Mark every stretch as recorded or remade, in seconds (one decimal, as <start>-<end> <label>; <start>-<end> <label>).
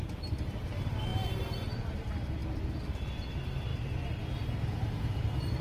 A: 0.0-5.6 recorded